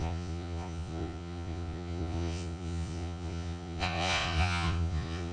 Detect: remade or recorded remade